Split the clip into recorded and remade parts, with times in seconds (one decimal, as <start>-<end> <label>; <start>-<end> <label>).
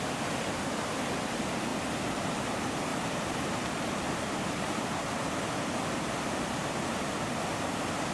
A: 0.0-1.7 recorded; 1.7-2.4 remade; 2.4-2.9 recorded; 2.9-5.3 remade; 5.3-8.1 recorded